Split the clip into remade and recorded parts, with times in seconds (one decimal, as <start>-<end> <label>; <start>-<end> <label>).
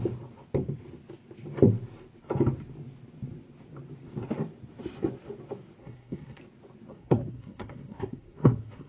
0.0-5.8 recorded; 5.8-6.4 remade; 6.4-6.9 recorded; 6.9-8.9 remade